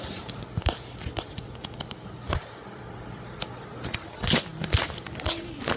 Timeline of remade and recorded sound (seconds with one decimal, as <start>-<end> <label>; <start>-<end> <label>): 0.0-3.4 remade; 3.4-5.8 recorded